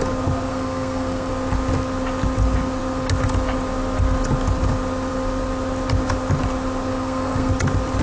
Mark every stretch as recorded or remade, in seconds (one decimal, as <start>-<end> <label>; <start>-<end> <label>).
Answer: 0.0-0.5 recorded; 0.5-1.3 remade; 1.3-6.9 recorded; 6.9-7.5 remade; 7.5-8.0 recorded

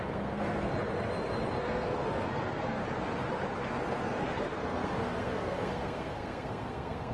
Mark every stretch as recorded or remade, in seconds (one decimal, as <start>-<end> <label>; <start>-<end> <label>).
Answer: 0.0-0.7 remade; 0.7-1.6 recorded; 1.6-2.8 remade; 2.8-3.9 recorded; 3.9-7.1 remade